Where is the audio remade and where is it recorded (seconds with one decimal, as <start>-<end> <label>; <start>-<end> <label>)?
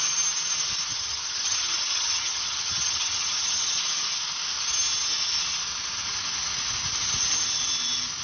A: 0.0-0.9 recorded; 0.9-3.8 remade; 3.8-8.2 recorded